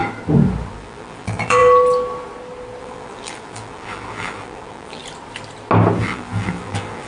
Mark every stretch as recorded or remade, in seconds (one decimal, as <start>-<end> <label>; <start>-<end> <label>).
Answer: 0.0-0.7 recorded; 0.7-1.6 remade; 1.6-2.8 recorded; 2.8-5.0 remade; 5.0-6.0 recorded; 6.0-7.1 remade